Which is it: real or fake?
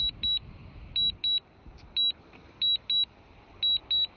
real